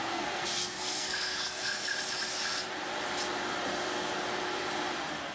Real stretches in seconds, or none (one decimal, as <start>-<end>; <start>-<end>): 1.9-5.3